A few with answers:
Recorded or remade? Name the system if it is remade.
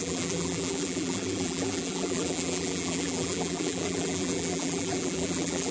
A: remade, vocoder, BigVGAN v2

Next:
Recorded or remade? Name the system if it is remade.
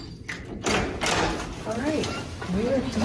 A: recorded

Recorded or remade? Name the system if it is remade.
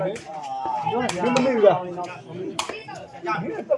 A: remade, vocoder, BigVGAN v2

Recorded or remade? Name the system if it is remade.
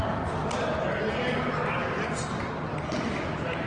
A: recorded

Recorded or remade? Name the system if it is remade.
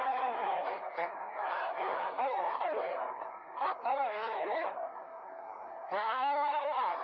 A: remade, codec, SNAC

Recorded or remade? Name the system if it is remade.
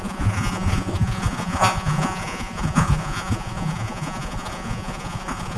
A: remade, vocoder, Vocos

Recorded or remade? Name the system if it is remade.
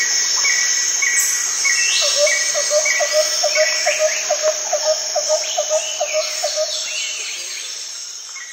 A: recorded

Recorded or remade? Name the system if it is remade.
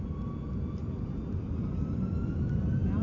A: recorded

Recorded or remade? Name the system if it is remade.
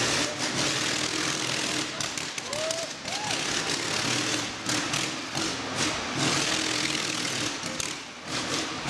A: recorded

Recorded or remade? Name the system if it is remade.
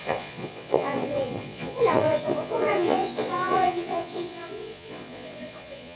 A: remade, vocoder, Vocos